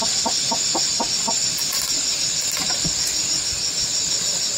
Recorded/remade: recorded